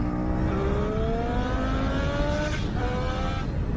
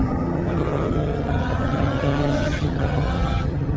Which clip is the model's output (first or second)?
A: second